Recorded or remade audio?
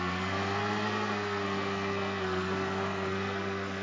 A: remade